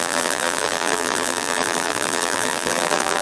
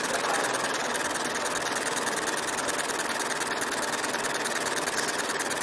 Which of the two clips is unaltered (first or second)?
second